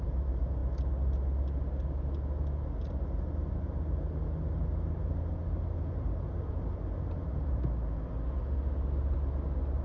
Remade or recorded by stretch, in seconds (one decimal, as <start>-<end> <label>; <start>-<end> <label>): 0.0-9.8 recorded